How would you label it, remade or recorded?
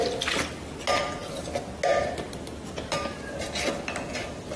recorded